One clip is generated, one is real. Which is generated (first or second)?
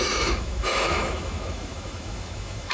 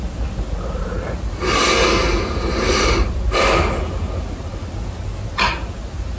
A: first